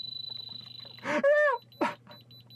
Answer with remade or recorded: recorded